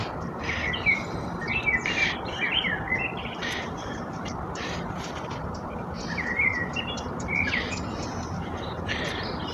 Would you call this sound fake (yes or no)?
yes